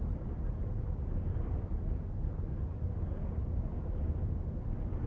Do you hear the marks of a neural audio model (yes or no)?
no